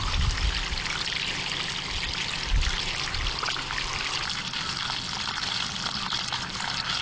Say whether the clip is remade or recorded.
recorded